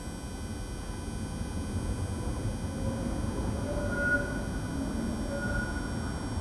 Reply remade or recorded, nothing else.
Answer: recorded